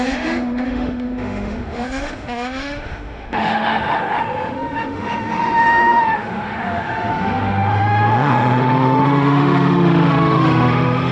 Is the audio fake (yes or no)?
yes